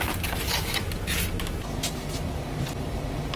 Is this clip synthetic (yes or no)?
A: no